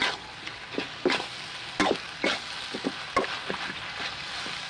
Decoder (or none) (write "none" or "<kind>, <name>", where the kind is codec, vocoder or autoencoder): none